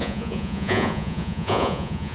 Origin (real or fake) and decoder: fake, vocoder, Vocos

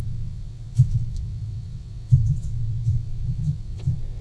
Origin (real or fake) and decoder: fake, vocoder, WaveNeXt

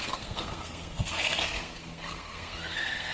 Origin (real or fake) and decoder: fake, codec, SNAC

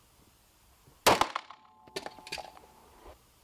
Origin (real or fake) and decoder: real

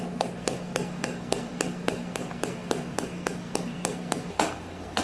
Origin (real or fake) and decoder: fake, codec, SNAC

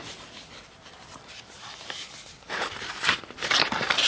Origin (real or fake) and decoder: fake, vocoder, BigVGAN v2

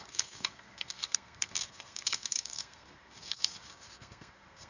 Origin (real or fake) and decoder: fake, codec, SNAC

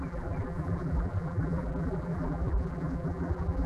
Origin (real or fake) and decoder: fake, vocoder, BigVGAN v2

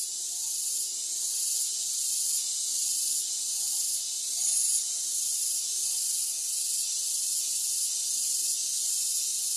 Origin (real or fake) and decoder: real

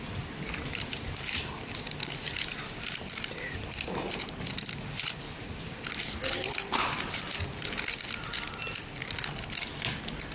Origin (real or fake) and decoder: real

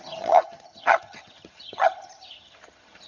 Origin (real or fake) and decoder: fake, vocoder, HiFi-GAN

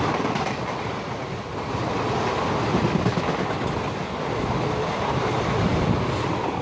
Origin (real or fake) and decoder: real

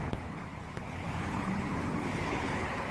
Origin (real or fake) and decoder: fake, codec, HILCodec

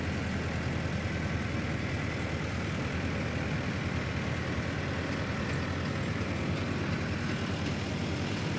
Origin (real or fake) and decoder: real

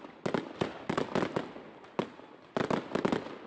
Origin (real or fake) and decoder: real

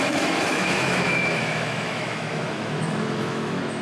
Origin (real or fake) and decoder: fake, autoencoder, DAC-VAE